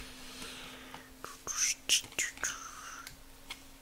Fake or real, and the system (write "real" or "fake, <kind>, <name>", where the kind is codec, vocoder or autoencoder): real